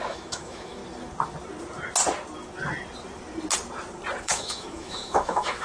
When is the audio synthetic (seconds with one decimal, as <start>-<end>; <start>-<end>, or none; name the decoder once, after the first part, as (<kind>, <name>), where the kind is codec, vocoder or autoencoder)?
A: 0.0-0.8 (autoencoder, DAC-VAE); 4.2-5.6